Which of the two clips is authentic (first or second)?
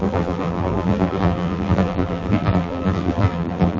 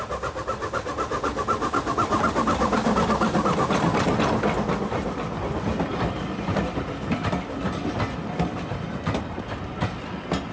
second